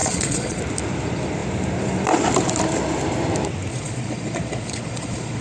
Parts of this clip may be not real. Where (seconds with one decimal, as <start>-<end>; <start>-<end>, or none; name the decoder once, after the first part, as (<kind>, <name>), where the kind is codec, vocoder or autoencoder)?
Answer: 0.0-0.6 (vocoder, Vocos); 3.7-5.4